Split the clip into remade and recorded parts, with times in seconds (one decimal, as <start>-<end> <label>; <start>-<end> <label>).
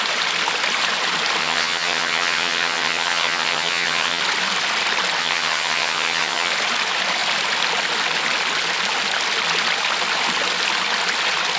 0.0-1.4 recorded; 1.4-4.2 remade; 4.2-5.2 recorded; 5.2-6.5 remade; 6.5-11.6 recorded